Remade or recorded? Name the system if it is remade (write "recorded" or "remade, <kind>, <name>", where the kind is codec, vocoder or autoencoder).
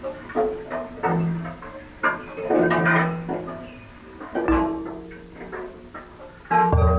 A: recorded